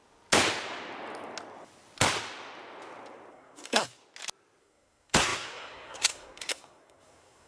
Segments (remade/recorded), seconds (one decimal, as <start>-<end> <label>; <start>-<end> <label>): 0.0-3.3 recorded; 3.3-4.0 remade; 4.0-4.6 recorded; 4.6-7.5 remade